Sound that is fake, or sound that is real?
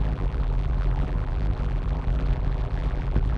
fake